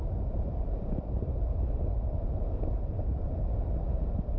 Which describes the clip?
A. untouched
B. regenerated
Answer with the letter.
B